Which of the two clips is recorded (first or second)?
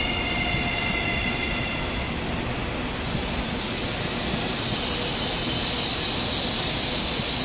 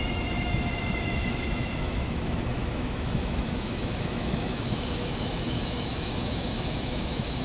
first